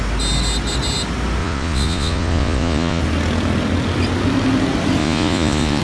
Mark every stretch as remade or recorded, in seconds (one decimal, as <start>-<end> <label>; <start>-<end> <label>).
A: 0.0-1.4 recorded; 1.4-3.0 remade; 3.0-5.0 recorded; 5.0-5.8 remade